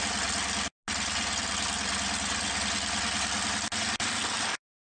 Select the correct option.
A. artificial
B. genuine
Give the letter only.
B